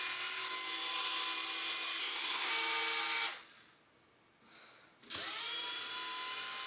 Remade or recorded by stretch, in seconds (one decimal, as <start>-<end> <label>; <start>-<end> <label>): 0.0-2.0 recorded; 2.0-2.5 remade; 2.5-6.7 recorded